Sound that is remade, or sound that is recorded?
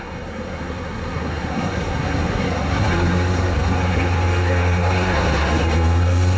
remade